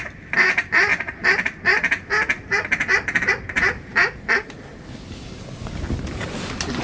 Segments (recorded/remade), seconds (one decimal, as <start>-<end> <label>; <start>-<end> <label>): 0.0-6.8 recorded